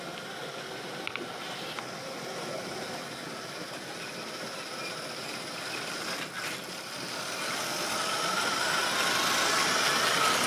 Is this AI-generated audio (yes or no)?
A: no